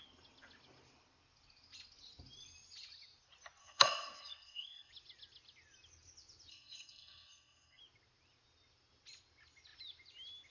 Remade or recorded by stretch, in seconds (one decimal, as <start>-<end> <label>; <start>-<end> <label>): 0.0-3.6 recorded; 3.6-4.9 remade; 4.9-6.5 recorded; 6.5-7.8 remade; 7.8-10.5 recorded